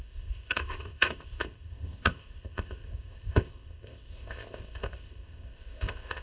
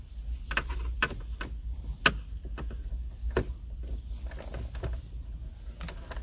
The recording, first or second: second